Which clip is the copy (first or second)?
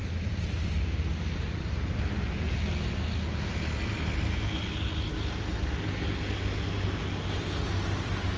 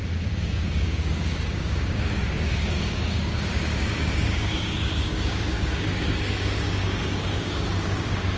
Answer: second